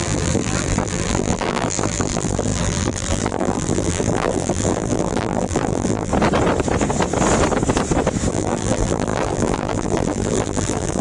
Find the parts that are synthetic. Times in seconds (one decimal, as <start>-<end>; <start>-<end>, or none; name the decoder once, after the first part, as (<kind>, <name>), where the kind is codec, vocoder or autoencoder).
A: 0.0-6.1 (vocoder, BigVGAN v2); 8.3-11.0